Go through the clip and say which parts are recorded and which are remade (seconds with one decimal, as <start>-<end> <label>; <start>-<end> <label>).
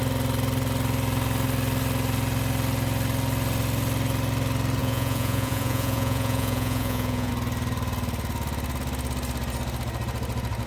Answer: 0.0-4.8 recorded; 4.8-7.3 remade; 7.3-10.7 recorded